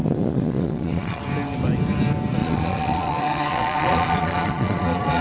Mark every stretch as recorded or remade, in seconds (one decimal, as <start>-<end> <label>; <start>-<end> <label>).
0.0-1.2 remade; 1.2-2.4 recorded; 2.4-5.2 remade